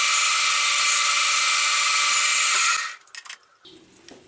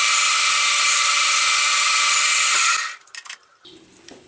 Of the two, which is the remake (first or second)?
second